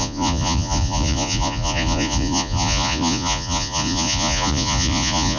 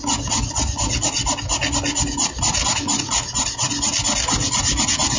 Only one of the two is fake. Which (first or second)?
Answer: first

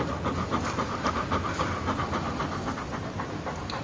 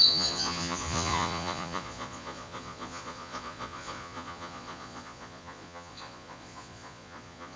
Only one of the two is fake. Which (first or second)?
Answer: second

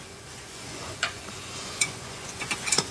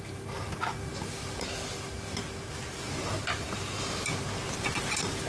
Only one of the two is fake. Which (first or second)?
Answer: first